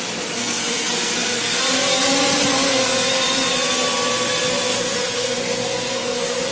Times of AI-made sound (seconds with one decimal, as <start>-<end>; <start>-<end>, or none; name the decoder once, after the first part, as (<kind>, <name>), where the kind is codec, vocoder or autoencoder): 0.4-1.6 (codec, SNAC); 2.5-3.1; 4.7-6.5